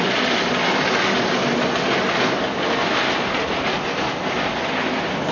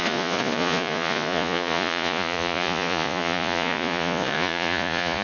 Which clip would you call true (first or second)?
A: first